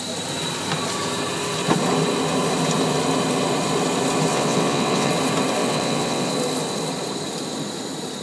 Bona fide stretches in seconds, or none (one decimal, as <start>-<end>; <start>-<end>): 0.0-4.3; 5.1-5.6; 6.3-8.2